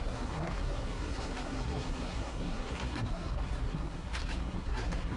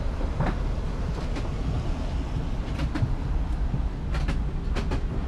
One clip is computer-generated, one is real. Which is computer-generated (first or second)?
first